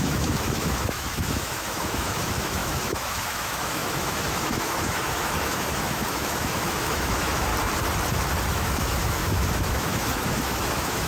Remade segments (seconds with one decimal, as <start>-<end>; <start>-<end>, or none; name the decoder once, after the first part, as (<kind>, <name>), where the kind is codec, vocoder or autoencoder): 0.0-7.5 (autoencoder, DAC-VAE); 8.5-11.1